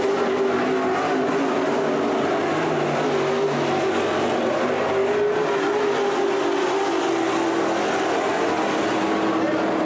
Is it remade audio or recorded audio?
recorded